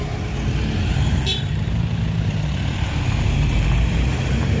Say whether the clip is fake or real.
fake